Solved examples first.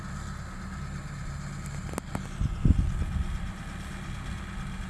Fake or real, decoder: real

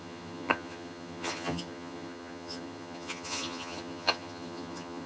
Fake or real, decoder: fake, vocoder, HiFi-GAN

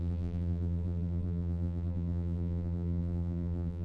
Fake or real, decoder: fake, vocoder, BigVGAN v2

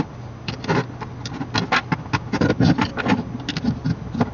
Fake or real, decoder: real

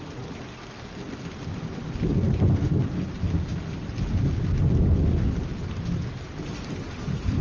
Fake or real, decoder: real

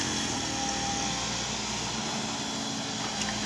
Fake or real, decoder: real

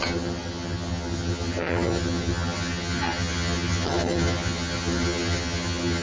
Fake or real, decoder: fake, vocoder, HiFi-GAN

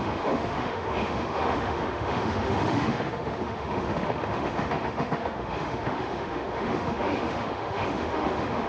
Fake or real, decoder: fake, autoencoder, DAC-VAE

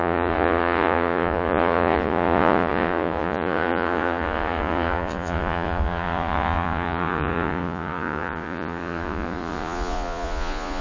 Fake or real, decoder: fake, vocoder, Vocos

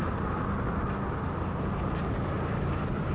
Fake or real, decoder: real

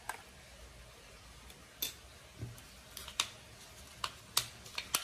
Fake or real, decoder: real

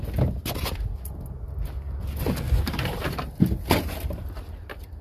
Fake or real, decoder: real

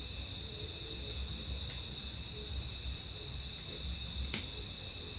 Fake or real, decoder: real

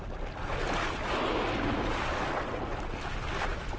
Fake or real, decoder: real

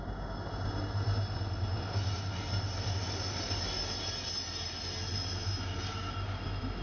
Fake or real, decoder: real